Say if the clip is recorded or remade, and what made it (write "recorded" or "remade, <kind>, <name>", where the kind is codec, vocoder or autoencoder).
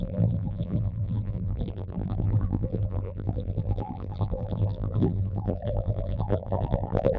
remade, vocoder, BigVGAN v2